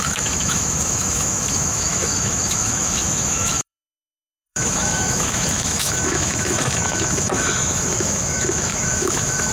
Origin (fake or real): fake